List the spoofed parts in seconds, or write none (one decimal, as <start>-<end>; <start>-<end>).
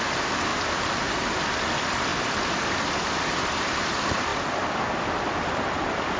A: 0.0-0.5; 1.6-2.1; 2.9-4.3; 5.1-6.2